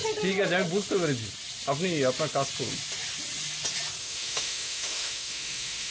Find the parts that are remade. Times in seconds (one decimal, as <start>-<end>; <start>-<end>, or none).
4.0-5.9